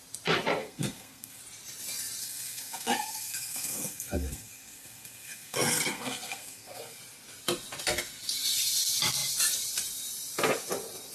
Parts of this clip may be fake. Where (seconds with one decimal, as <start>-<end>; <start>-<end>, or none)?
0.6-1.4; 2.2-7.0